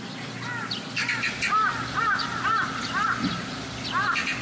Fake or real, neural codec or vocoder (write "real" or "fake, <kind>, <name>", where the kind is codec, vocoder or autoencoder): real